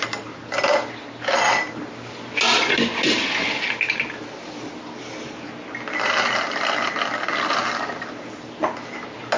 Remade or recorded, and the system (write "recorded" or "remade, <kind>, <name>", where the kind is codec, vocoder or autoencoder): recorded